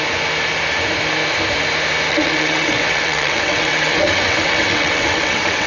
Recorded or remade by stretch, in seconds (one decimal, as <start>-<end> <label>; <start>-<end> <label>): 0.0-2.1 recorded; 2.1-5.7 remade